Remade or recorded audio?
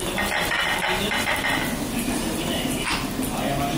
recorded